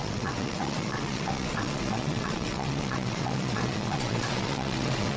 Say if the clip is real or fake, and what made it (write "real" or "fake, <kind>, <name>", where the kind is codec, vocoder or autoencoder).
fake, vocoder, WaveNeXt